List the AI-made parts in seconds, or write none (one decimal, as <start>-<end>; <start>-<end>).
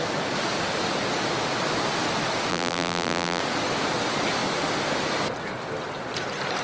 2.5-3.4